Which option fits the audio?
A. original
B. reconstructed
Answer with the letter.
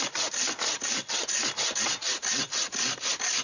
A